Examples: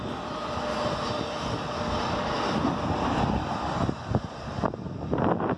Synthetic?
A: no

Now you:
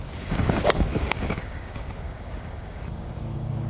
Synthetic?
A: yes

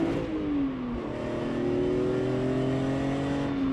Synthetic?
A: no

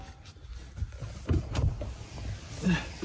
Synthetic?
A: no